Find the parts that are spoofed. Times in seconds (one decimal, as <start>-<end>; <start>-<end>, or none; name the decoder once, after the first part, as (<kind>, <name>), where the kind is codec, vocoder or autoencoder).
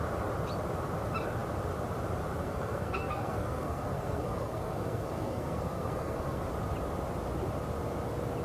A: 2.4-6.4 (codec, SNAC)